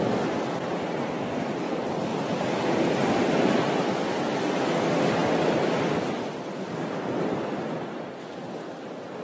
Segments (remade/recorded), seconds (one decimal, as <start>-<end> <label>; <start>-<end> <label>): 0.0-2.1 recorded; 2.1-4.7 remade; 4.7-9.2 recorded